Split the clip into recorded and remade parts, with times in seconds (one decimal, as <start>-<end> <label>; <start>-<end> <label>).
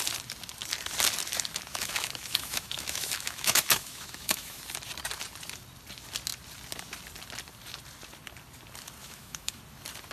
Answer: 0.0-1.7 recorded; 1.7-4.6 remade; 4.6-9.0 recorded; 9.0-9.6 remade; 9.6-10.1 recorded